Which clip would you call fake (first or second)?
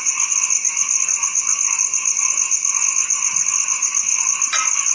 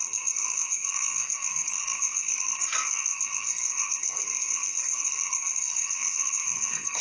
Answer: second